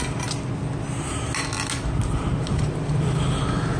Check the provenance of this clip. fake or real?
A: real